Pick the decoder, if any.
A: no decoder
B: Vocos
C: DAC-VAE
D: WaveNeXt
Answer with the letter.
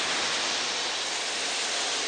A